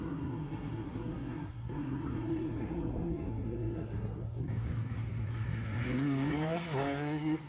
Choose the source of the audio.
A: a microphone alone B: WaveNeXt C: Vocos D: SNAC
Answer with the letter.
D